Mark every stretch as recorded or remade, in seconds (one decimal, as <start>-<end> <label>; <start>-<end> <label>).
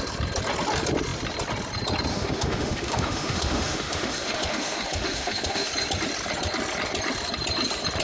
0.0-2.1 recorded; 2.1-5.7 remade; 5.7-8.0 recorded